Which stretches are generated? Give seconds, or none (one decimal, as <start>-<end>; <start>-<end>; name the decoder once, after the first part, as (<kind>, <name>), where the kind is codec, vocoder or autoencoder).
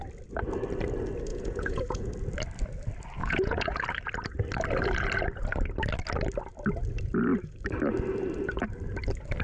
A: 1.3-2.1 (vocoder, Vocos); 3.2-3.8